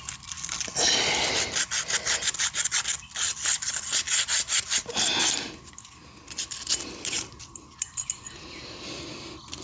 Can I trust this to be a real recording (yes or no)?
yes